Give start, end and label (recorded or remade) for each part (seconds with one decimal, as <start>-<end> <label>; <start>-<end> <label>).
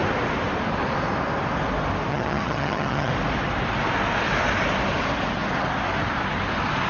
0.0-2.1 recorded; 2.1-3.1 remade; 3.1-6.9 recorded